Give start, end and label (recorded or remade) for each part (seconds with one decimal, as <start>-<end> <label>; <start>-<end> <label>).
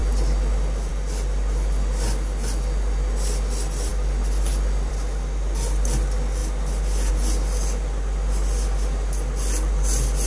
0.0-10.3 recorded